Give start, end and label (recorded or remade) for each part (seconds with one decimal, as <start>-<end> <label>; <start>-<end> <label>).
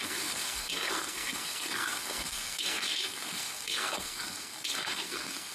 0.0-5.5 remade